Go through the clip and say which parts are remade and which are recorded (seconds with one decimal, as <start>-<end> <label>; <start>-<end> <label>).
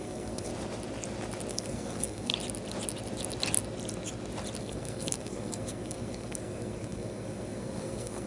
0.0-0.5 remade; 0.5-1.5 recorded; 1.5-2.3 remade; 2.3-4.6 recorded; 4.6-8.3 remade